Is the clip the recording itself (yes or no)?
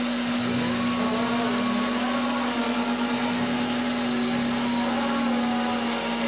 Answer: yes